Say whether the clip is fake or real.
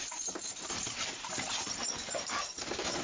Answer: fake